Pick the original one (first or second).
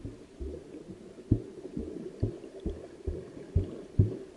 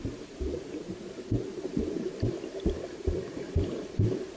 first